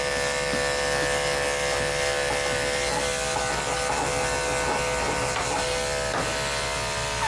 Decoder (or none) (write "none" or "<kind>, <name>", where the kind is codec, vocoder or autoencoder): none